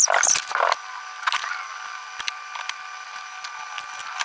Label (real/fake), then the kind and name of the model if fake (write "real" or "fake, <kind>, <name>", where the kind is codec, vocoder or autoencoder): real